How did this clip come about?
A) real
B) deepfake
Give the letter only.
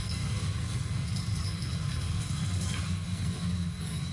B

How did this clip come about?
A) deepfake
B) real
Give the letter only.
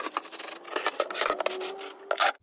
B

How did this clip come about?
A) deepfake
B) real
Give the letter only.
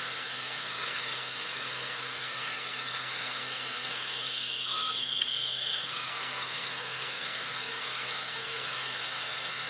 A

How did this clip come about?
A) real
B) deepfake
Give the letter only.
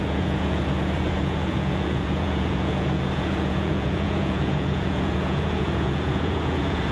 B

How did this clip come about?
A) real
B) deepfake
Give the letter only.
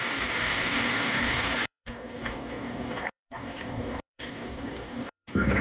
B